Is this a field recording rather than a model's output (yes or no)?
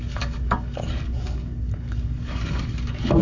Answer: no